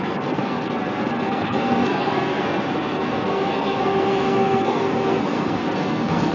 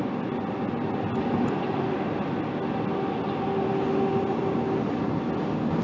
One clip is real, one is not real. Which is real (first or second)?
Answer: second